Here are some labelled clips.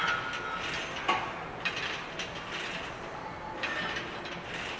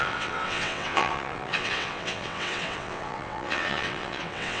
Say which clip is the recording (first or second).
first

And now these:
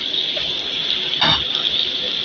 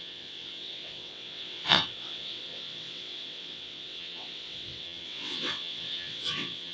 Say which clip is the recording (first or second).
first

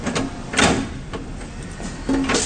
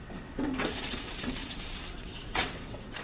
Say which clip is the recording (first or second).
first